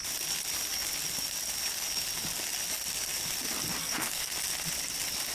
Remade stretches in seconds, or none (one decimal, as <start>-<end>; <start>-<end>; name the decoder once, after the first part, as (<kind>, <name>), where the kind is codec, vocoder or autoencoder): 3.8-4.3 (codec, SNAC)

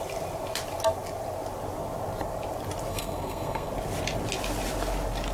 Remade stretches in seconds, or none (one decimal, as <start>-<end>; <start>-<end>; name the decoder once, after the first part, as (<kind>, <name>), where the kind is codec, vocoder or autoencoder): 2.9-3.7 (codec, SNAC)

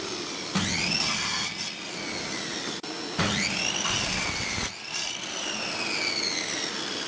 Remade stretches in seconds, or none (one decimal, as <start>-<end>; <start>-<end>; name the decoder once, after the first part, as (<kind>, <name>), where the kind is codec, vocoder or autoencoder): none

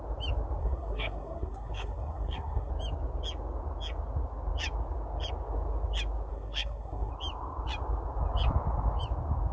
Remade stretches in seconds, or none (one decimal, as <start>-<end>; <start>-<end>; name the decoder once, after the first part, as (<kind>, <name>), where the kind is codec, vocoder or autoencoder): 0.6-2.7 (codec, SNAC); 6.3-7.1

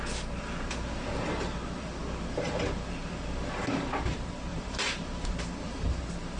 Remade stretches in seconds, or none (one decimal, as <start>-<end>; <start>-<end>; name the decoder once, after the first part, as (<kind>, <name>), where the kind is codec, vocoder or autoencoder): 4.5-6.0 (vocoder, BigVGAN v2)

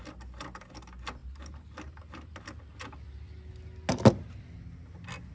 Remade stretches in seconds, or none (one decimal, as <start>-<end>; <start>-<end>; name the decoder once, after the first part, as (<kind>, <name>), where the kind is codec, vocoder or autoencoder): none